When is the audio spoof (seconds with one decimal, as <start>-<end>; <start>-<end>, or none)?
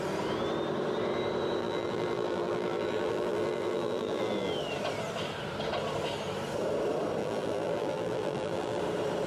1.6-4.5; 7.2-8.8